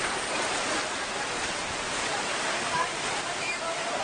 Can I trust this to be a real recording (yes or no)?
no